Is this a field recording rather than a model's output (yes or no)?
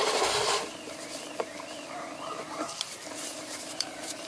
no